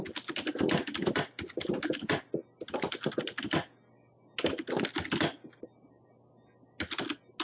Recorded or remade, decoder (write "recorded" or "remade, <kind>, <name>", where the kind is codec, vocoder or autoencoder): recorded